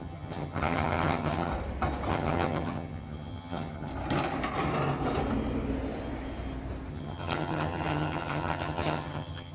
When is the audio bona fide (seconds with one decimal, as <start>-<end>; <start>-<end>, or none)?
1.5-2.1; 3.9-6.9